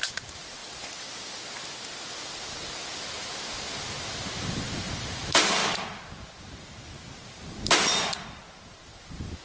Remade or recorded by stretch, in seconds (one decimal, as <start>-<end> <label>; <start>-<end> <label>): 0.0-0.6 remade; 0.6-3.8 recorded; 3.8-9.4 remade